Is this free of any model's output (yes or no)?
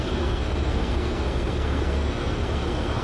no